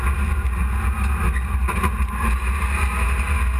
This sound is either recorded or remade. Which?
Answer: recorded